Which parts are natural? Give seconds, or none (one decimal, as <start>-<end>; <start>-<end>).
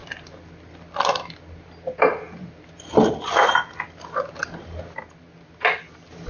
0.0-6.3